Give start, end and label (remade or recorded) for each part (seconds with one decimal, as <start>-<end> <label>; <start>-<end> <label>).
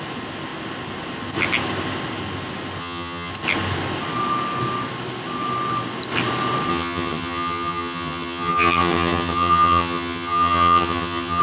0.0-2.8 recorded; 2.8-3.3 remade; 3.3-6.7 recorded; 6.7-11.4 remade